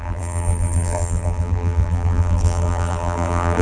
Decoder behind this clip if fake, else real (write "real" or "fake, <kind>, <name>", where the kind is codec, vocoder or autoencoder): fake, vocoder, BigVGAN v2